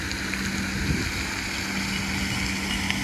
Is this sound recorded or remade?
recorded